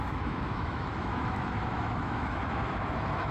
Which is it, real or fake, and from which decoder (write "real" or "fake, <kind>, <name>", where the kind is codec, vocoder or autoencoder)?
fake, autoencoder, DAC-VAE